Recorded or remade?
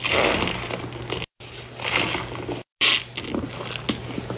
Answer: recorded